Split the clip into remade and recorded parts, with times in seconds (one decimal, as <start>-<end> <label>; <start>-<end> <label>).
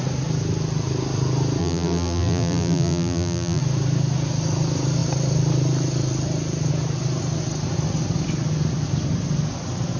0.0-1.6 recorded; 1.6-3.6 remade; 3.6-10.0 recorded